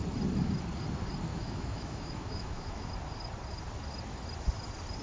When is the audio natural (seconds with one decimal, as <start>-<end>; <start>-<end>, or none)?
0.0-1.3; 2.9-5.0